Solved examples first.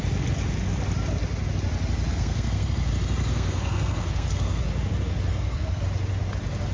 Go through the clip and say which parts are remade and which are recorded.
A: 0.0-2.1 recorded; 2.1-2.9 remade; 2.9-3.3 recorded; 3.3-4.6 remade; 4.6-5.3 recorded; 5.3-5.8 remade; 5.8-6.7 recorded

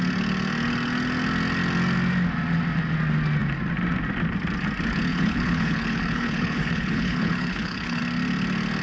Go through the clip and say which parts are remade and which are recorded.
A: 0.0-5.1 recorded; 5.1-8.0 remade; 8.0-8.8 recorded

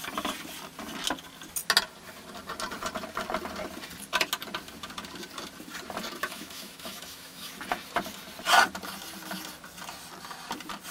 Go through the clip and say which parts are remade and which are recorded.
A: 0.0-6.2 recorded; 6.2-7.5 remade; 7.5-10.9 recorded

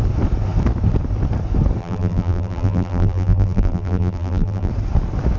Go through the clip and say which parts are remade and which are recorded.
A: 0.0-1.8 recorded; 1.8-4.7 remade; 4.7-5.4 recorded